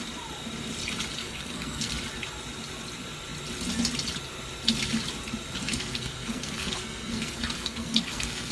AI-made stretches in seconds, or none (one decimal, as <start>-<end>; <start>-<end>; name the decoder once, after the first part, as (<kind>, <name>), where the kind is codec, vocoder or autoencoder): 1.2-1.9 (codec, SNAC); 5.6-8.5